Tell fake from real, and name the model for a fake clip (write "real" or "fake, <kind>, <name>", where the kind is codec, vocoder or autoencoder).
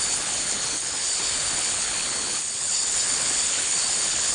fake, codec, HILCodec